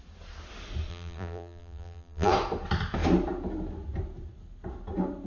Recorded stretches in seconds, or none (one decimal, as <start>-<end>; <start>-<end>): 0.0-0.9; 2.3-5.3